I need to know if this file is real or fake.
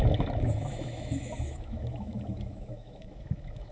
fake